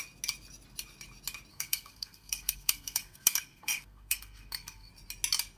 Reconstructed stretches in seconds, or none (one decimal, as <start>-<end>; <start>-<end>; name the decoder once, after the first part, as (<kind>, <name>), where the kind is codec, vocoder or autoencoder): 1.5-4.9 (codec, SNAC)